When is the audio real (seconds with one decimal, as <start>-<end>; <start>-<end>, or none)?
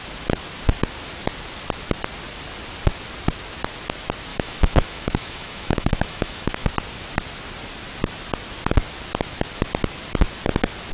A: 0.0-4.3; 6.7-10.9